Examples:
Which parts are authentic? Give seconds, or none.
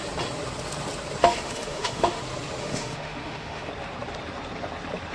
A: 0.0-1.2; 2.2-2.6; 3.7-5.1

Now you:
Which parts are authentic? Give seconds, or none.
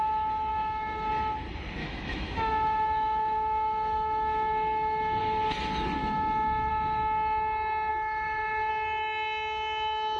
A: 0.0-0.5; 1.1-1.8; 5.2-6.0; 6.7-7.9; 8.7-10.2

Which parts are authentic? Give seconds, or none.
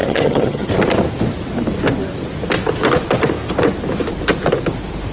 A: 0.7-5.1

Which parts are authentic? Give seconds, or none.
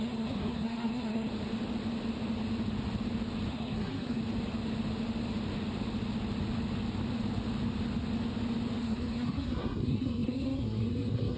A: 1.3-3.5; 4.2-8.8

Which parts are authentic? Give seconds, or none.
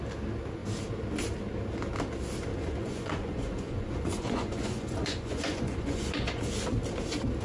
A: 0.0-2.5; 6.4-7.4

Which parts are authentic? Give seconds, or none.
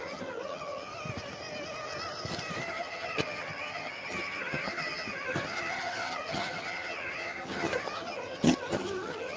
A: 0.9-2.7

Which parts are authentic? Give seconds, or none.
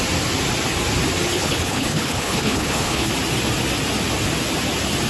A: 0.0-1.3; 3.1-5.1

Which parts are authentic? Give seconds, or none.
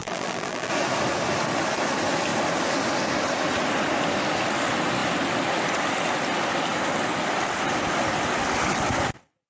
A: 0.7-9.5